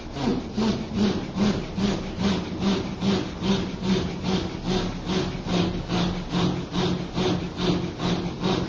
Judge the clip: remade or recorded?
recorded